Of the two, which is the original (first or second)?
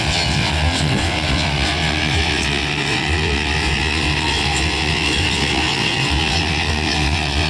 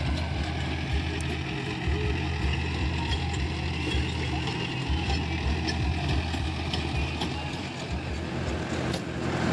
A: second